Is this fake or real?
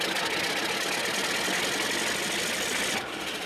real